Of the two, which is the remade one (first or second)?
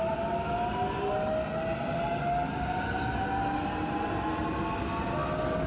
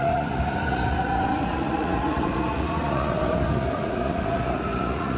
second